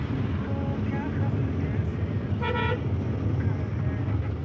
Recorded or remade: recorded